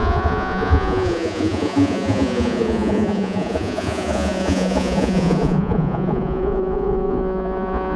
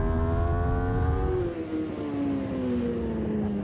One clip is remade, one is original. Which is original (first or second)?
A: second